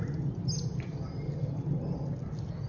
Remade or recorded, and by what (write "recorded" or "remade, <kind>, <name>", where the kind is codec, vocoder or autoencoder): recorded